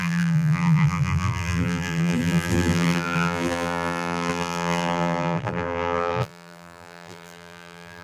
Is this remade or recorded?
remade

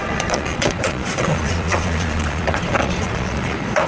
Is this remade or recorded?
remade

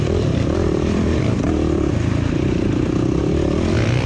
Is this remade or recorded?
remade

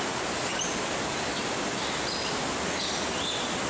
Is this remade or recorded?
recorded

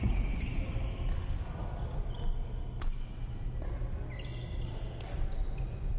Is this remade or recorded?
recorded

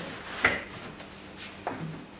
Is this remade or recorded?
recorded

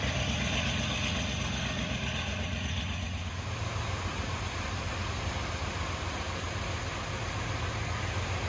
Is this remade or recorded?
recorded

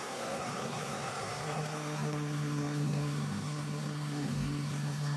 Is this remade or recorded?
remade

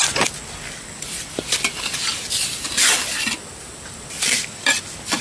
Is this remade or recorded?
recorded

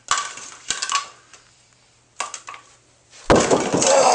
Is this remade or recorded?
recorded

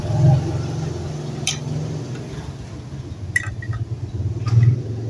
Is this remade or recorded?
recorded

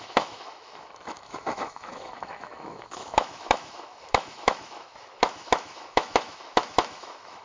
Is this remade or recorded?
remade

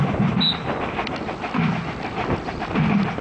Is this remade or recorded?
recorded